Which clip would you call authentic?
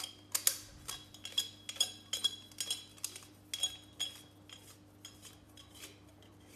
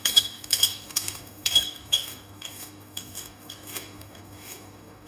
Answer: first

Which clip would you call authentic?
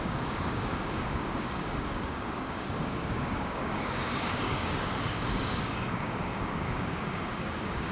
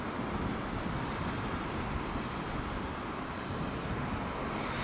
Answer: second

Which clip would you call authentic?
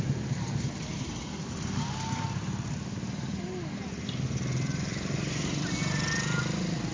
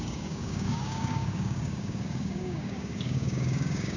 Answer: first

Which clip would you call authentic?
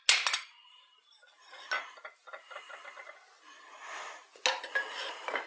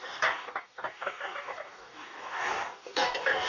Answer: first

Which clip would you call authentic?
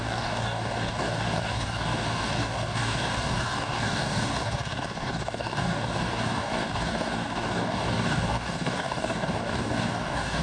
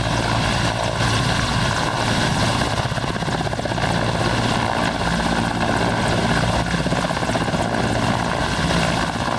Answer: second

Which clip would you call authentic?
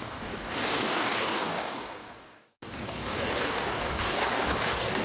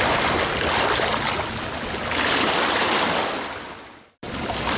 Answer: second